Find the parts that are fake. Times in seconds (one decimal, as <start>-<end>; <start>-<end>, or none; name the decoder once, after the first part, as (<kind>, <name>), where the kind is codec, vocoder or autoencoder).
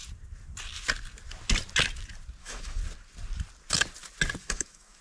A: 2.4-2.8 (autoencoder, DAC-VAE); 4.4-5.0